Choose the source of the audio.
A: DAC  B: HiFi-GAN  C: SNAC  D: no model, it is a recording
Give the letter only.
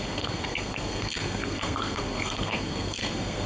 C